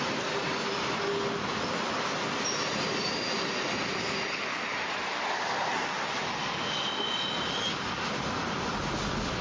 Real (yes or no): yes